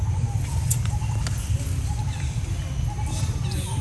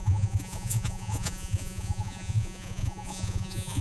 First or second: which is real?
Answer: first